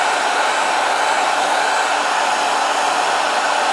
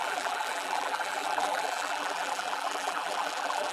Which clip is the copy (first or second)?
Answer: second